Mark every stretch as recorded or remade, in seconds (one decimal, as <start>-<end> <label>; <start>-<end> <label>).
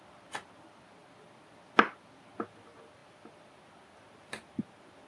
0.0-5.1 recorded